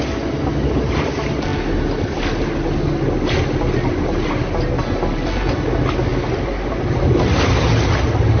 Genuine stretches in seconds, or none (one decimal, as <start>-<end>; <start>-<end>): 0.0-8.4